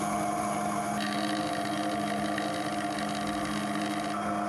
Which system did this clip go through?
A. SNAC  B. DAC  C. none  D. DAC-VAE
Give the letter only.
C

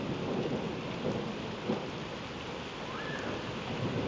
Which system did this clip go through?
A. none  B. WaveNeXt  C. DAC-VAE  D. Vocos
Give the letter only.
A